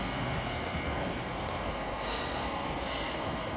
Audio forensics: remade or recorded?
remade